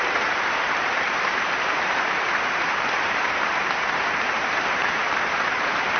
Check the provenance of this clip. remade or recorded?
remade